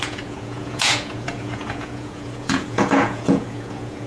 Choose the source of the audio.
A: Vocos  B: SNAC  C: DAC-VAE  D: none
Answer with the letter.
A